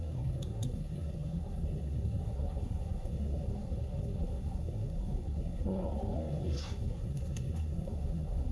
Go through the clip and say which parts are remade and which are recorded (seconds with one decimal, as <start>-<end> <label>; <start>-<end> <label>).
0.0-8.5 remade